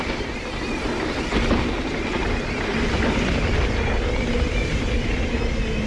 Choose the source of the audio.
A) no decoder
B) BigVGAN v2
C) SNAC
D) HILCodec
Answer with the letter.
A